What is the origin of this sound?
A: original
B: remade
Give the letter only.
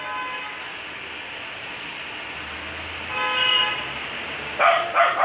A